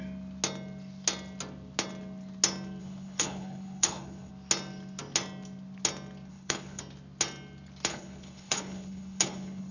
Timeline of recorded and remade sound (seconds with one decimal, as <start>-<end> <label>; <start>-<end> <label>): 0.0-2.8 recorded; 2.8-4.3 remade; 4.3-6.3 recorded; 6.3-6.8 remade; 6.8-7.9 recorded; 7.9-9.7 remade